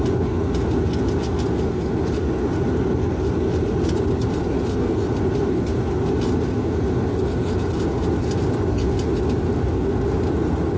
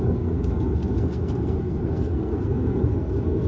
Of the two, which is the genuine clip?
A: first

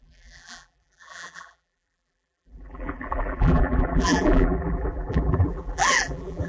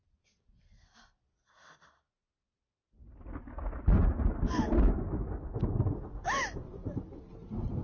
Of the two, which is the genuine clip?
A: second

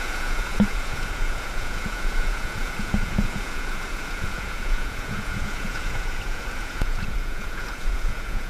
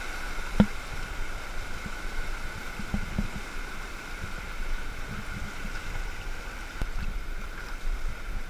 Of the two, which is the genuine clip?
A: second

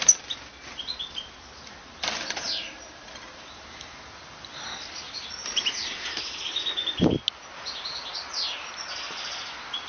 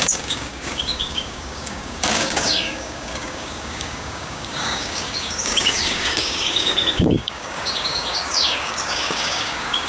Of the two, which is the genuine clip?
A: first